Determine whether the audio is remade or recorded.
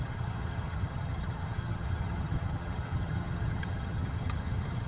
remade